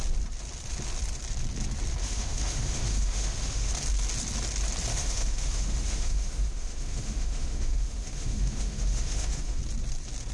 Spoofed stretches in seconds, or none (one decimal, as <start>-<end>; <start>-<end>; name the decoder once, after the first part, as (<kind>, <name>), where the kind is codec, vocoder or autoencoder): 2.0-3.7 (autoencoder, DAC-VAE); 4.9-9.6